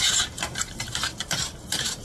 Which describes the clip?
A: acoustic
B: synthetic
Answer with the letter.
B